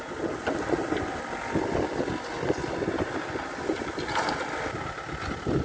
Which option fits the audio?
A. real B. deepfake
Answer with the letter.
A